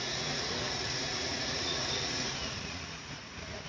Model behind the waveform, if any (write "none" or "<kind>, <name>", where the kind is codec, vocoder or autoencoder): vocoder, Vocos